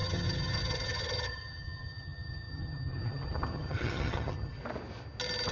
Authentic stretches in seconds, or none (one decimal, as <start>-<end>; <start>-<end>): 4.6-5.5

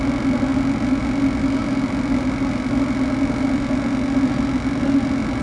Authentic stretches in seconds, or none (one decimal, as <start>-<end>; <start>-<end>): 0.0-5.4

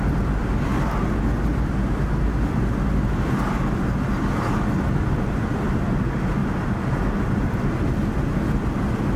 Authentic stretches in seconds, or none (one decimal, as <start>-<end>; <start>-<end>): 0.0-5.4; 6.0-9.2

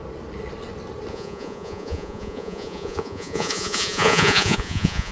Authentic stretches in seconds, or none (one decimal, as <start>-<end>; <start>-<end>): 0.0-1.1

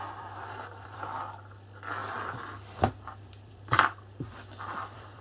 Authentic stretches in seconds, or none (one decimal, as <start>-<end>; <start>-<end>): none